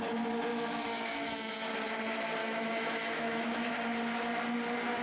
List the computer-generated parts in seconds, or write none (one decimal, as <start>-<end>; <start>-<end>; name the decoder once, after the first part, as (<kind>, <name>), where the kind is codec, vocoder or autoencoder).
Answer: 0.5-1.5 (autoencoder, DAC-VAE); 2.4-3.7